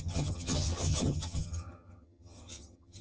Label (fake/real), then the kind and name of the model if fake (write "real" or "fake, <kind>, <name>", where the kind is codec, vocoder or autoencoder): fake, vocoder, HiFi-GAN